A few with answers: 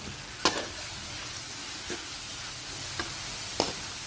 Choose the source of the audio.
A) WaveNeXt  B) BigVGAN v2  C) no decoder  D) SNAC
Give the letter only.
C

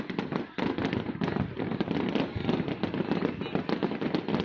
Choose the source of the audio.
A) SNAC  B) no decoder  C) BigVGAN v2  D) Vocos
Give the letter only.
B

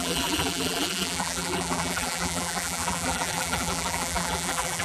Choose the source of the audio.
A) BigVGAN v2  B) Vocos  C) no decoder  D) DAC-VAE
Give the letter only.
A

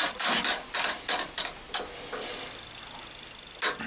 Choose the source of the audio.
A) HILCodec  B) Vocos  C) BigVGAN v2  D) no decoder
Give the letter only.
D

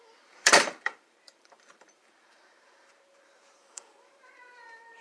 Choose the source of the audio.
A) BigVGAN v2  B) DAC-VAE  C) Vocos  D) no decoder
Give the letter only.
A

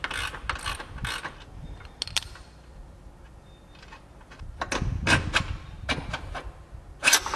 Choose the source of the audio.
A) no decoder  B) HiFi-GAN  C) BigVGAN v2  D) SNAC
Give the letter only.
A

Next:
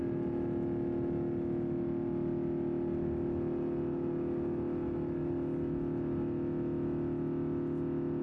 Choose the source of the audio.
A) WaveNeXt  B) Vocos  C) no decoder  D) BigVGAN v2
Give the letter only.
C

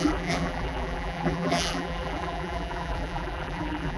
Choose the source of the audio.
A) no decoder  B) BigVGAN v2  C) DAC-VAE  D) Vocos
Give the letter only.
B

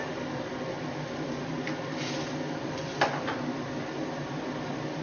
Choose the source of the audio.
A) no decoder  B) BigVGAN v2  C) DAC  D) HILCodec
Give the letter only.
B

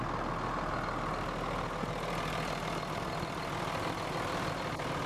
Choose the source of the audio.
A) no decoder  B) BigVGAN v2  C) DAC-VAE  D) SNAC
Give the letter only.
A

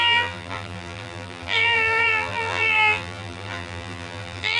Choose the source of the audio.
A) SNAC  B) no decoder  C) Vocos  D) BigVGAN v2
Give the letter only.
D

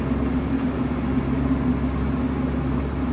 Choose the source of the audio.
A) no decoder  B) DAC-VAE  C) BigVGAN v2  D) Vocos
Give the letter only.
A